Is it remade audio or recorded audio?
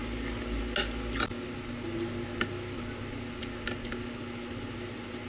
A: recorded